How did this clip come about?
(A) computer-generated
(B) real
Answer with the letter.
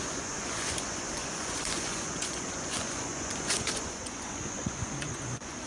A